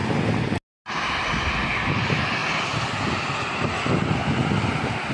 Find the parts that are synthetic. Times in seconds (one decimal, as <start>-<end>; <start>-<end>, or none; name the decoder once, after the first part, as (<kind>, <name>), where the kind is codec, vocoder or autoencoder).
none

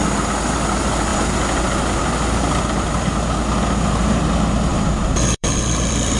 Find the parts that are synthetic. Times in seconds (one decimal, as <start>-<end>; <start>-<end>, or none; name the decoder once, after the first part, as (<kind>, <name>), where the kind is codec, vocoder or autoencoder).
4.7-6.2 (vocoder, BigVGAN v2)